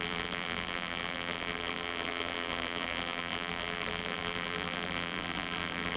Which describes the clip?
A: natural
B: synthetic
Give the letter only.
B